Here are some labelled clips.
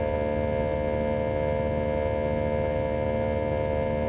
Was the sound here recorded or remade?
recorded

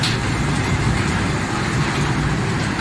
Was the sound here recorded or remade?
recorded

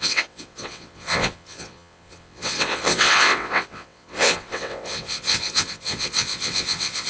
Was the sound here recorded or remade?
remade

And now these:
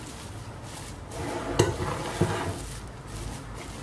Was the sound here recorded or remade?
recorded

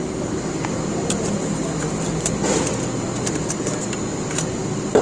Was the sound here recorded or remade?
recorded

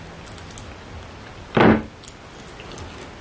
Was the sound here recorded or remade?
recorded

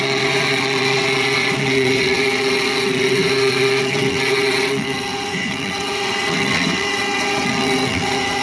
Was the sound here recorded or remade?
remade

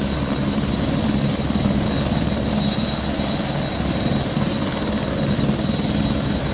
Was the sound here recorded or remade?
recorded